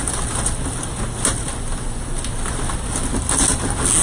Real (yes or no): yes